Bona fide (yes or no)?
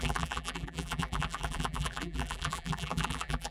no